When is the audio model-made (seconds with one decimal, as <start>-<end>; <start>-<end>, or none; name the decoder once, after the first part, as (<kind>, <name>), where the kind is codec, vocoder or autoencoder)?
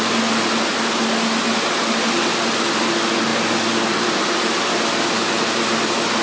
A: none